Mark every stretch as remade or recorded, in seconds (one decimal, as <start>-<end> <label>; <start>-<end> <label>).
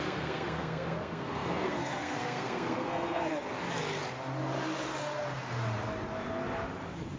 0.0-3.3 remade; 3.3-7.2 recorded